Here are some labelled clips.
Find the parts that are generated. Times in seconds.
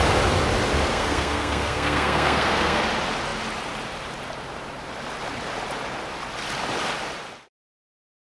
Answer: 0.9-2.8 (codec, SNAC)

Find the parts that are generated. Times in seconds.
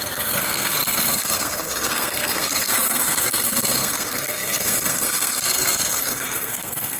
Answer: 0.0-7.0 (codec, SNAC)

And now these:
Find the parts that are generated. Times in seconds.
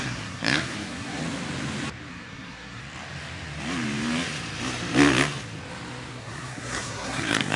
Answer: 0.0-1.2 (codec, SNAC); 2.1-2.8; 6.1-7.6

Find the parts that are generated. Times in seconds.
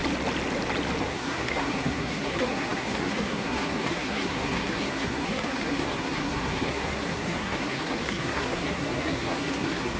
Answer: 1.0-10.0 (codec, SNAC)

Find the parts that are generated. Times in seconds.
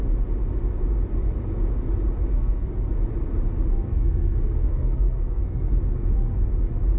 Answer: 2.3-2.9 (codec, SNAC); 3.9-5.8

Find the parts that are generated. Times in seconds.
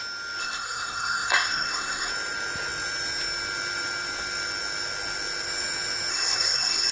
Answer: 0.4-2.1 (codec, SNAC); 6.1-6.9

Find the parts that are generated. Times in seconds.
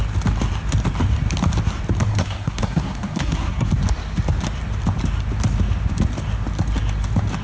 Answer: 2.1-3.7 (codec, SNAC)